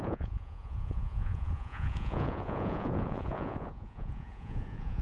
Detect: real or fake fake